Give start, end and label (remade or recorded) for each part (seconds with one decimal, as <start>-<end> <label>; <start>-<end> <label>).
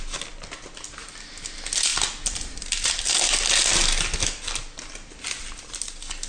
0.0-6.3 recorded